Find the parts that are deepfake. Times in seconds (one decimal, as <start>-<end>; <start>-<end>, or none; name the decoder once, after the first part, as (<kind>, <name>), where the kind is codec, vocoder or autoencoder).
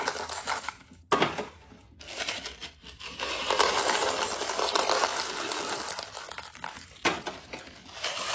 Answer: none